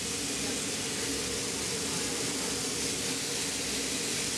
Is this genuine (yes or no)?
yes